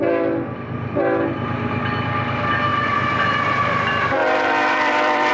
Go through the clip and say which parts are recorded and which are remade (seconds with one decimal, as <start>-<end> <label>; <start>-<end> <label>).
0.0-2.7 recorded; 2.7-5.3 remade